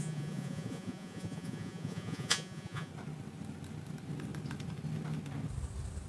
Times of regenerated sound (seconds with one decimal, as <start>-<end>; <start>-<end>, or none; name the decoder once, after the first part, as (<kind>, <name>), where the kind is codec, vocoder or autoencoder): 0.0-2.9 (vocoder, Vocos)